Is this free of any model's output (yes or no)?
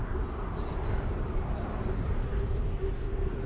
yes